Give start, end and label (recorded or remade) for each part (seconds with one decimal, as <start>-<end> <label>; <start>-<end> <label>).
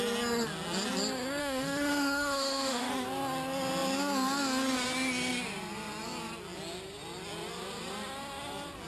0.0-1.4 recorded; 1.4-2.9 remade; 2.9-8.9 recorded